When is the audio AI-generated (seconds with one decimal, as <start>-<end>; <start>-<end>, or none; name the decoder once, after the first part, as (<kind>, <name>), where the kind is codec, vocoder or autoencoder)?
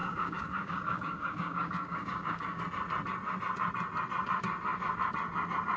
0.0-2.6 (codec, DAC)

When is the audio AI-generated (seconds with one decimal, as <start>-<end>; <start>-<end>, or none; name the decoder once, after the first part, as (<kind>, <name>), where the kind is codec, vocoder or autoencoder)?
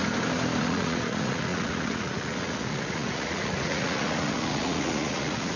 0.6-5.6 (vocoder, Vocos)